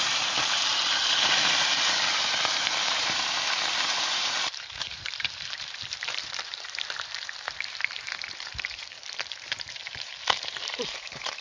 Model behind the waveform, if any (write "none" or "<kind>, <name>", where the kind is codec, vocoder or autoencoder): vocoder, BigVGAN v2